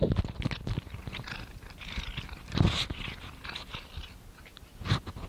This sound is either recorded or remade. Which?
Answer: recorded